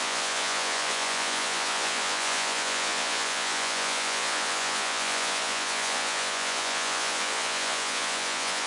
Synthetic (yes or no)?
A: yes